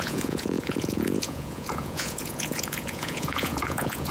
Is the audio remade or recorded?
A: remade